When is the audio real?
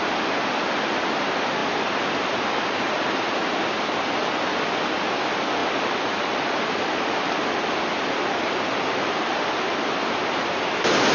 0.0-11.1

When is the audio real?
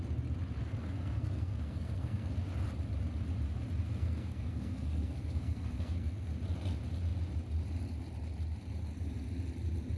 0.0-0.6; 2.3-3.8; 6.3-10.0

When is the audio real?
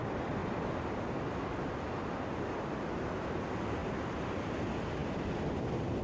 0.0-3.8; 4.6-5.0; 5.5-6.0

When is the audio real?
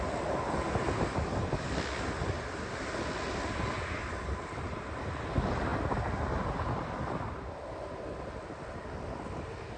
0.0-9.8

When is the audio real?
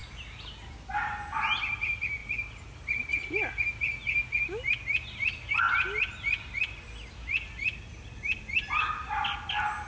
0.0-9.9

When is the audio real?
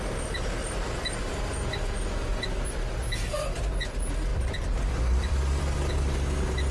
0.0-0.6; 1.7-4.3; 5.9-6.7